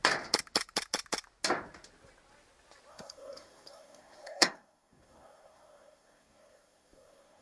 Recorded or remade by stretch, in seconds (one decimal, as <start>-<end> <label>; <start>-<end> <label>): 0.0-2.9 recorded; 2.9-7.4 remade